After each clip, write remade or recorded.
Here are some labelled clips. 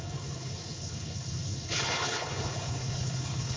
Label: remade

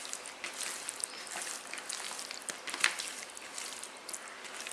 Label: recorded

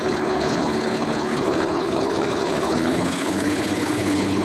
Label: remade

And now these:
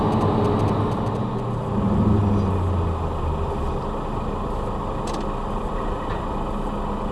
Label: recorded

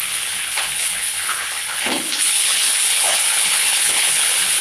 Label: remade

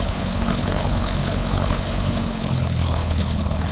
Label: remade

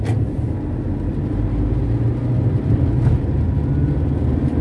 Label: recorded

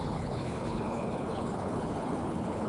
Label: remade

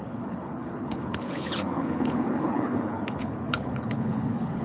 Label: remade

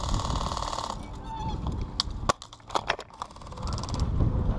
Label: recorded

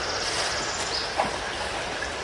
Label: recorded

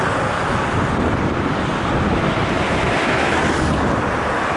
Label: recorded